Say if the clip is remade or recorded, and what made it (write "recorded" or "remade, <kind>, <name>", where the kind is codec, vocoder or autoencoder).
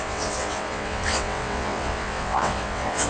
remade, vocoder, WaveNeXt